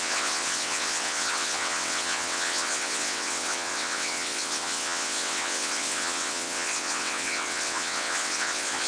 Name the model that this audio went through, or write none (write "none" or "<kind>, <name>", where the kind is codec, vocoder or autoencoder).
vocoder, WaveNeXt